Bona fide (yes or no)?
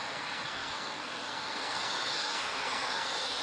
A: no